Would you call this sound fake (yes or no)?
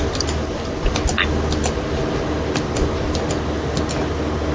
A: no